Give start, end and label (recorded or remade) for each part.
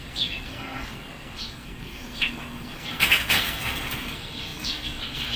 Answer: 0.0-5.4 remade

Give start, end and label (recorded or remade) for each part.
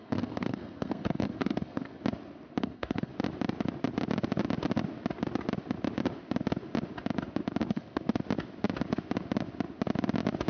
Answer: 0.0-2.0 remade; 2.0-2.6 recorded; 2.6-3.1 remade; 3.1-7.7 recorded; 7.7-8.1 remade; 8.1-10.5 recorded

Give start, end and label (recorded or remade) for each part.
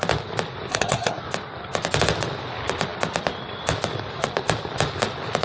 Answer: 0.0-0.7 recorded; 0.7-1.2 remade; 1.2-5.4 recorded